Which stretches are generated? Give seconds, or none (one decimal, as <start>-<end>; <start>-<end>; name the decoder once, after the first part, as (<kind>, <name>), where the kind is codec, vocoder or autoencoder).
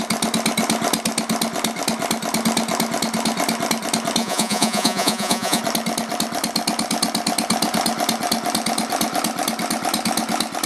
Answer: 4.2-5.6 (vocoder, Vocos)